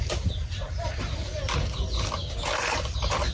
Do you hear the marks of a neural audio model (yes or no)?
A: no